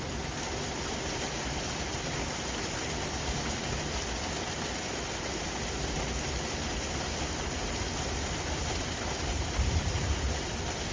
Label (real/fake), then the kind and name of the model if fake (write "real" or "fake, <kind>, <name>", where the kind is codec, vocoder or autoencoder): real